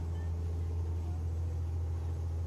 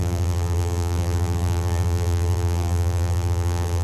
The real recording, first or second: first